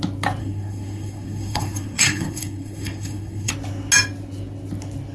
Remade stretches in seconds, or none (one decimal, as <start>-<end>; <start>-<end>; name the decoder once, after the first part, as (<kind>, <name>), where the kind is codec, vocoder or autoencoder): 0.4-3.5 (codec, SNAC)